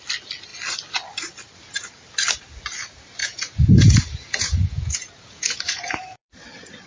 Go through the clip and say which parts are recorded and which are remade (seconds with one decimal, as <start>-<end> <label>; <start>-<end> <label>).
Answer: 0.0-3.2 recorded; 3.2-6.3 remade; 6.3-6.9 recorded